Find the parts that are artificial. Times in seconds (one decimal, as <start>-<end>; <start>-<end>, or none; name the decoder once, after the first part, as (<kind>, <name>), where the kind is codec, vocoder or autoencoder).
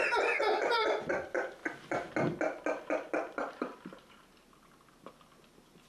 1.6-5.1 (vocoder, BigVGAN v2)